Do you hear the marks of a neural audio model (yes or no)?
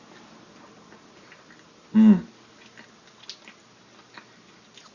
no